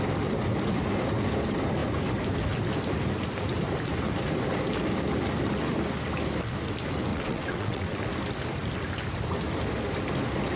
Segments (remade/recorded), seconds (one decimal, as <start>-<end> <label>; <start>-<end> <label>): 0.0-7.1 recorded; 7.1-8.0 remade; 8.0-10.6 recorded